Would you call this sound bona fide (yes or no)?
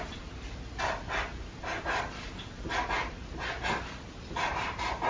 yes